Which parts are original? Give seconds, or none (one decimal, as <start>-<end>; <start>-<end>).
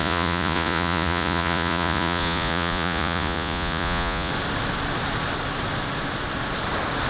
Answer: 4.3-7.1